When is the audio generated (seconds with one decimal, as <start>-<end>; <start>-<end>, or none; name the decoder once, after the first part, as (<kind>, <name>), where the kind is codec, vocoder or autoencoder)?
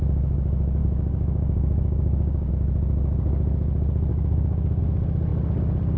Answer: 0.8-2.5 (codec, DAC); 4.1-4.8